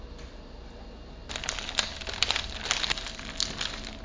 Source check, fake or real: real